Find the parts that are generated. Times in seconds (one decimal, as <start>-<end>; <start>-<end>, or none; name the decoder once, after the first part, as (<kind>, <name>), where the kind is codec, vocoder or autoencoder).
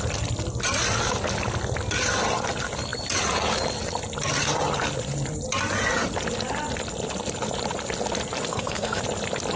8.5-9.0 (codec, SNAC)